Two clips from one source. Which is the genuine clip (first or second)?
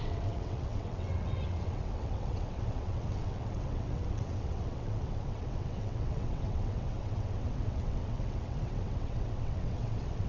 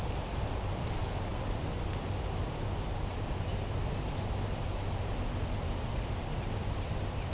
second